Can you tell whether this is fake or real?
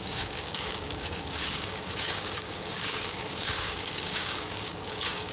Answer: fake